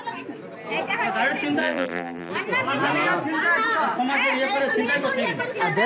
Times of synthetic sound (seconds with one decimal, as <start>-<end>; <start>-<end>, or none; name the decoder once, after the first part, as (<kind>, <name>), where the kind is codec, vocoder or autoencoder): 1.6-2.3 (vocoder, BigVGAN v2)

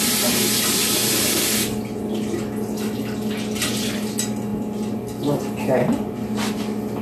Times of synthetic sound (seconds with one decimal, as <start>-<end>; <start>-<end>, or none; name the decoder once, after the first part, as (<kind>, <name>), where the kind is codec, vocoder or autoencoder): none

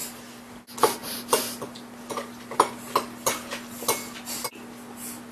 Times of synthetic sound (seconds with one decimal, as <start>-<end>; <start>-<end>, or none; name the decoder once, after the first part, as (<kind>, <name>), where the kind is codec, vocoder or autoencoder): 0.0-0.5 (vocoder, BigVGAN v2); 1.0-3.5

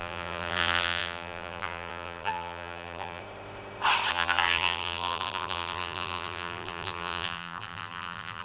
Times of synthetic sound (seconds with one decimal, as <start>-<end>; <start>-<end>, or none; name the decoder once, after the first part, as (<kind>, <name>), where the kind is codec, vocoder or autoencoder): 0.0-3.2 (vocoder, BigVGAN v2); 4.1-8.4

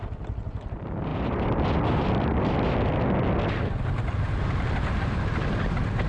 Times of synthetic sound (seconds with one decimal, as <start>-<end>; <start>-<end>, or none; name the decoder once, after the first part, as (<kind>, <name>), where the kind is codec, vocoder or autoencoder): none

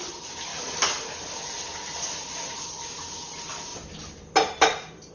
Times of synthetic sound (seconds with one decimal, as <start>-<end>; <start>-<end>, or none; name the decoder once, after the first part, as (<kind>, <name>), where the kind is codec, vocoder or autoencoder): none